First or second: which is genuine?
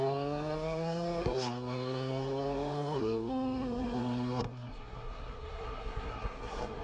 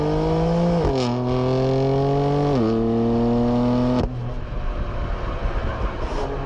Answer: second